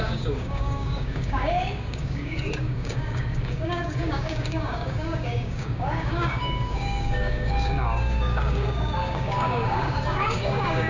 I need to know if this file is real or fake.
fake